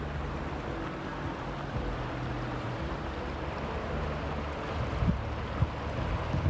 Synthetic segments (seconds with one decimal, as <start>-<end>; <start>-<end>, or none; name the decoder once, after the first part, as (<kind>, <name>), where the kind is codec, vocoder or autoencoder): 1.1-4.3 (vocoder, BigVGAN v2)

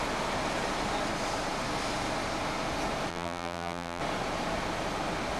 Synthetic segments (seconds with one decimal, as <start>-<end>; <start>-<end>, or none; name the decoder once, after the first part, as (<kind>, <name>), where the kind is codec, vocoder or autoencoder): 3.1-4.0 (vocoder, BigVGAN v2)

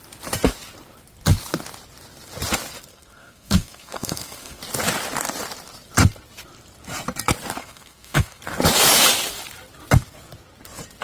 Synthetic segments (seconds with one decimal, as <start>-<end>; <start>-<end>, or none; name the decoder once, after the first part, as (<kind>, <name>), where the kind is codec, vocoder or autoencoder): 2.9-4.6 (codec, SNAC); 7.6-8.4